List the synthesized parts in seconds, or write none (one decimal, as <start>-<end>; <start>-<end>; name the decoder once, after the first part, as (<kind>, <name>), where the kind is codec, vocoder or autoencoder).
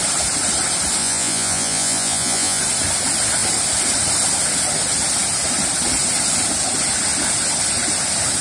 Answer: 1.0-2.6 (vocoder, Vocos)